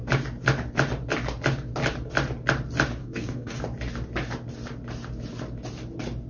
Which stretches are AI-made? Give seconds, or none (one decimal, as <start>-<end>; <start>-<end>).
3.0-3.6